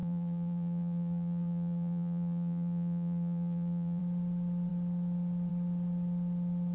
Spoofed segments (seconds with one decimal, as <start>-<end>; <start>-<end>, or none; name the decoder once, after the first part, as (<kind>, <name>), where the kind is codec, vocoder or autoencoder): 0.0-4.0 (vocoder, BigVGAN v2)